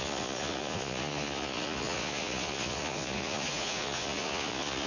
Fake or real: fake